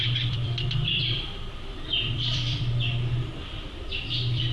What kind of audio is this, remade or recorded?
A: remade